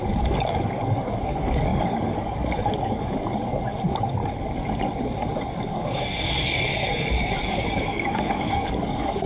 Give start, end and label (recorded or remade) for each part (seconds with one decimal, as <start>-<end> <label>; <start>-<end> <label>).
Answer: 0.0-4.2 remade; 4.2-5.7 recorded; 5.7-9.3 remade